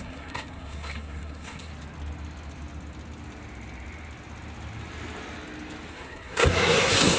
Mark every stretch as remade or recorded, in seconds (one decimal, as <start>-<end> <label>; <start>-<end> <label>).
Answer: 0.0-1.7 remade; 1.7-5.9 recorded; 5.9-7.2 remade